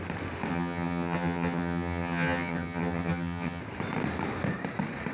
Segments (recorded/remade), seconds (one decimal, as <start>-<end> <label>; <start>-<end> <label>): 0.0-0.5 recorded; 0.5-3.6 remade; 3.6-5.1 recorded